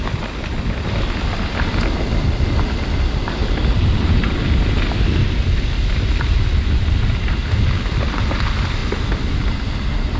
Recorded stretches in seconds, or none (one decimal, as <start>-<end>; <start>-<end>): 0.0-10.2